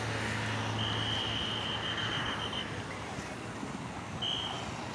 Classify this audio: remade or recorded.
recorded